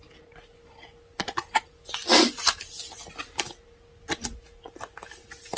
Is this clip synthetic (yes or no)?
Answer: no